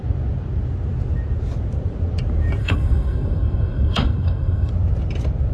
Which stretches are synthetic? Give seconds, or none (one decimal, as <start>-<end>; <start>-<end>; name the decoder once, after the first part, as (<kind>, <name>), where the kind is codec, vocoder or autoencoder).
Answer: 2.6-4.7 (codec, SNAC)